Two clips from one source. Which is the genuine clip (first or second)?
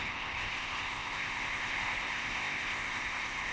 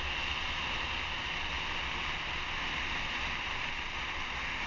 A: second